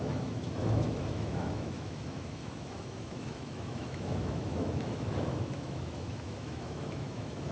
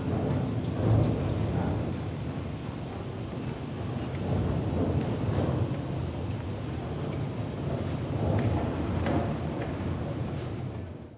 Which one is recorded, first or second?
second